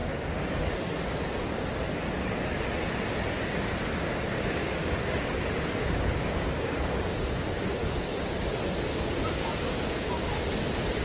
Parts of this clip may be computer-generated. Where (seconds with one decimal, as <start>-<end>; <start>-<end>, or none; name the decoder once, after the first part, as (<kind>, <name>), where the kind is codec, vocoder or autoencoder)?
3.9-7.7 (codec, DAC); 9.4-10.5